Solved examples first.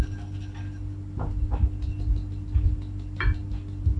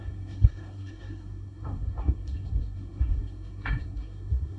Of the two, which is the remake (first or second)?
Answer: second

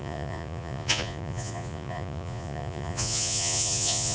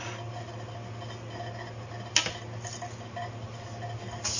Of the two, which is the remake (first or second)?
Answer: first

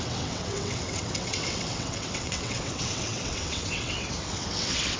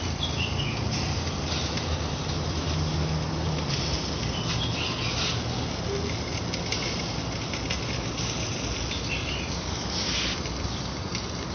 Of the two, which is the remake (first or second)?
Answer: first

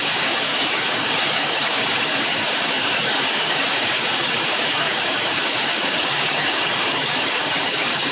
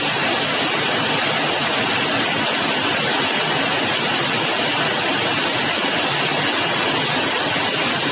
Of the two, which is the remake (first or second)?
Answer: first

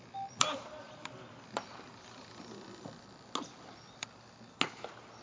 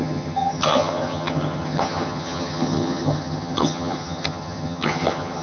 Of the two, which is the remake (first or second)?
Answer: second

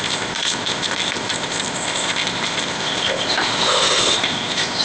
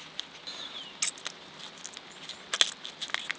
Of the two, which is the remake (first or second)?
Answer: first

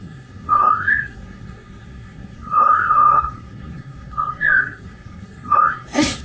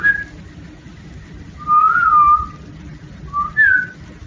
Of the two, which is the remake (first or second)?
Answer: first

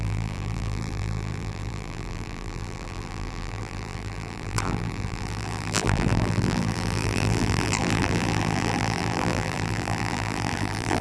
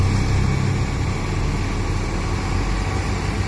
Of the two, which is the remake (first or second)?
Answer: first